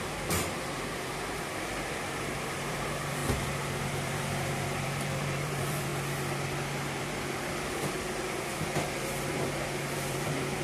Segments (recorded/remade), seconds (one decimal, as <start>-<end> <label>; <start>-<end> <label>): 0.0-3.2 remade; 3.2-3.8 recorded; 3.8-5.9 remade; 5.9-7.0 recorded; 7.0-10.6 remade